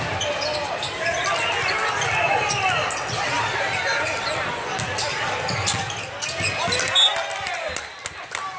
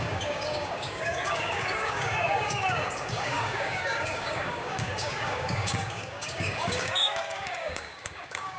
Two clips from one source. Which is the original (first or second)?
first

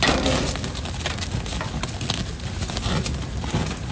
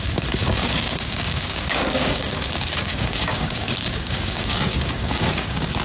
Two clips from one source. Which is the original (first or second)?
first